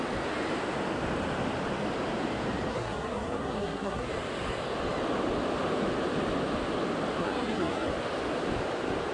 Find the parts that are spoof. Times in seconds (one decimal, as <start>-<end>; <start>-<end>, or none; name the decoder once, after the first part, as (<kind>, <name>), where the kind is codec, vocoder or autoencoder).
2.7-4.1 (codec, SNAC); 7.2-7.9